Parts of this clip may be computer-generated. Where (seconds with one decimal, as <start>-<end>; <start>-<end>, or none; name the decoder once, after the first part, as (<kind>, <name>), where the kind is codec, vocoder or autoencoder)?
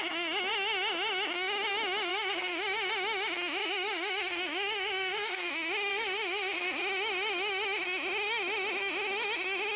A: 2.1-2.9 (codec, DAC); 3.6-5.5; 5.9-6.8